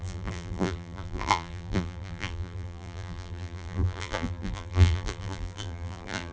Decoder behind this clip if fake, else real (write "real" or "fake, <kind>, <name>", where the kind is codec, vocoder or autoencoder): fake, vocoder, BigVGAN v2